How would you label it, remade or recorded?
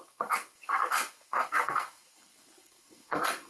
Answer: remade